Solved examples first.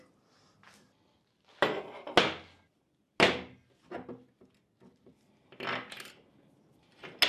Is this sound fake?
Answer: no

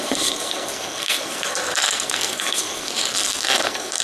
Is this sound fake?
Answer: yes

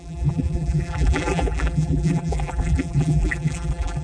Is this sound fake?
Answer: yes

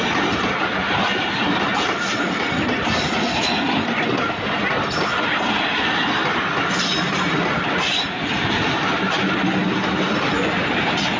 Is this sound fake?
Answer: no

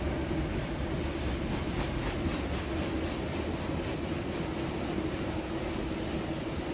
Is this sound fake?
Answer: no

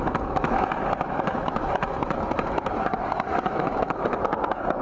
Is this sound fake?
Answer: yes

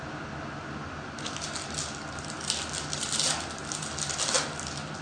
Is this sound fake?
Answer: no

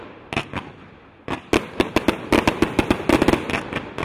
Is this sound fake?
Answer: no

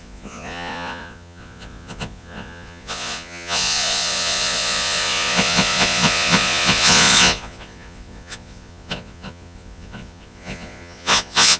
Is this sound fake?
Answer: yes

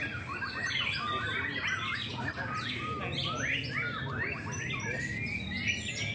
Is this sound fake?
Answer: no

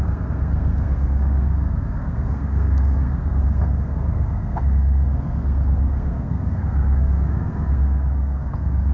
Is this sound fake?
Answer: yes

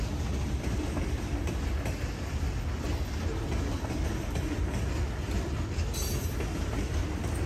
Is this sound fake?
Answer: no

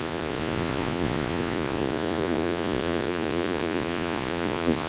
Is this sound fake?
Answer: yes